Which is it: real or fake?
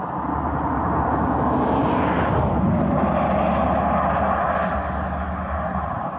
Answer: real